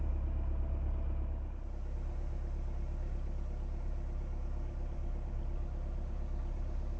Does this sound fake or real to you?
real